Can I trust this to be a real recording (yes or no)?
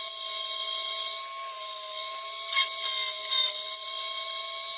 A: yes